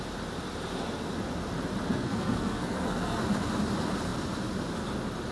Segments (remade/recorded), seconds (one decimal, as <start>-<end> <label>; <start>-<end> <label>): 0.0-1.9 recorded; 1.9-3.2 remade; 3.2-5.3 recorded